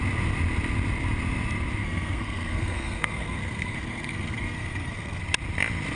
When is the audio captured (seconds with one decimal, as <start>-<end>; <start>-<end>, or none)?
0.0-1.8; 5.2-6.0